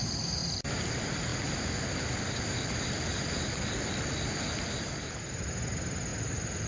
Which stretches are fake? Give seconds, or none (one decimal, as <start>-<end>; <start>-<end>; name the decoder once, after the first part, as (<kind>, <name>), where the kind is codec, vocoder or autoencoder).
none